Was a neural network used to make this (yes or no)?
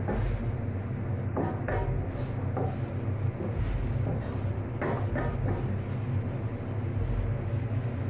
no